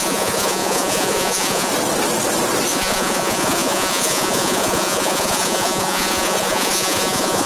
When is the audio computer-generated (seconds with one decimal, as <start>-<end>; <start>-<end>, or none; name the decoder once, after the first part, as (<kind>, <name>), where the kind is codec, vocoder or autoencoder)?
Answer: 0.0-1.7 (vocoder, Vocos); 2.7-7.5